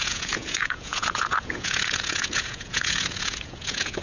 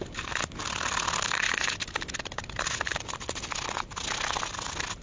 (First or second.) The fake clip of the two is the first